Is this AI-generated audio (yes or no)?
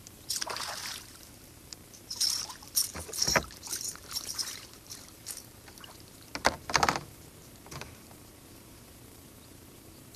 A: yes